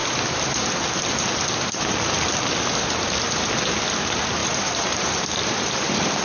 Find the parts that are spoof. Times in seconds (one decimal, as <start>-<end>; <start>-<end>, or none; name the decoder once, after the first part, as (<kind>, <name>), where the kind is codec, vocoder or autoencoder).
4.4-6.2 (vocoder, BigVGAN v2)